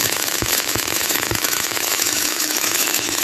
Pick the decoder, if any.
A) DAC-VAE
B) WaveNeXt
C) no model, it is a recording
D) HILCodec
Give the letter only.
A